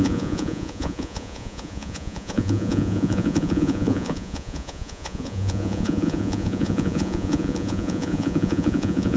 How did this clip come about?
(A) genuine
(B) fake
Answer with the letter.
B